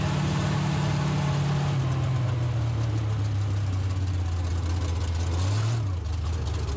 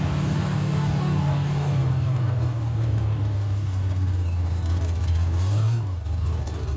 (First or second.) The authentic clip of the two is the first